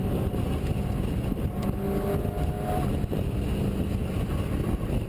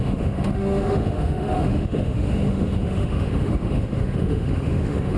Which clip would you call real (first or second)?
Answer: first